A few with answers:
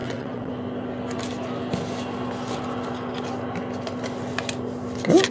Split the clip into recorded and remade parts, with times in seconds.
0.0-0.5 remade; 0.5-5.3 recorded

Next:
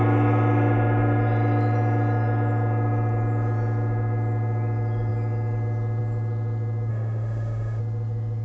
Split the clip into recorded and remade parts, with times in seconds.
0.0-6.9 recorded; 6.9-7.8 remade; 7.8-8.4 recorded

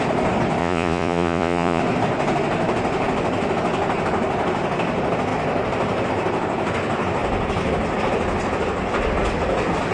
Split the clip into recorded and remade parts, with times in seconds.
0.0-0.6 recorded; 0.6-1.8 remade; 1.8-9.9 recorded

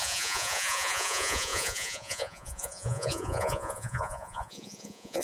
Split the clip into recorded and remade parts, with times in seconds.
0.0-5.2 remade

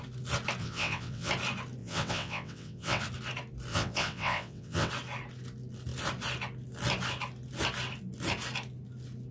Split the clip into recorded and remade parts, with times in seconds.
0.0-0.6 recorded; 0.6-1.3 remade; 1.3-1.8 recorded; 1.8-3.0 remade; 3.0-3.7 recorded; 3.7-4.9 remade; 4.9-9.3 recorded

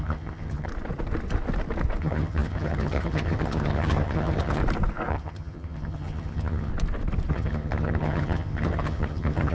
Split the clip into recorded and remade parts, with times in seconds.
0.0-0.7 remade; 0.7-2.0 recorded; 2.0-4.6 remade; 4.6-5.1 recorded; 5.1-6.7 remade; 6.7-7.3 recorded; 7.3-9.5 remade